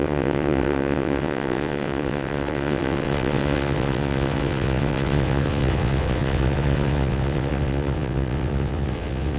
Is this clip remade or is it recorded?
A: remade